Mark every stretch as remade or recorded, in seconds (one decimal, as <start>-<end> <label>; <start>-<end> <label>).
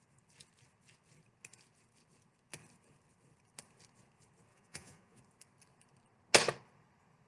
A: 0.0-4.5 recorded; 4.5-5.2 remade; 5.2-7.3 recorded